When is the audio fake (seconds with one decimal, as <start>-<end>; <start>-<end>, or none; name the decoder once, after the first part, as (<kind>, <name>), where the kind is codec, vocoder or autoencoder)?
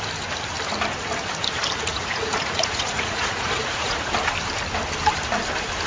1.9-4.1 (vocoder, Vocos)